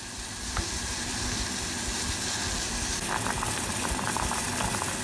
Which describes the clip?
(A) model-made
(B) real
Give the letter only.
B